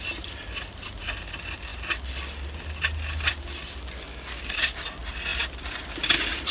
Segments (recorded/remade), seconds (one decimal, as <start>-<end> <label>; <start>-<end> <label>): 0.0-4.1 recorded; 4.1-4.8 remade; 4.8-6.5 recorded